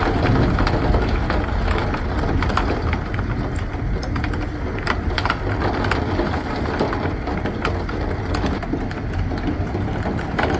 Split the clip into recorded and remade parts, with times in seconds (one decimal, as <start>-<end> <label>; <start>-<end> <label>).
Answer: 0.0-10.6 recorded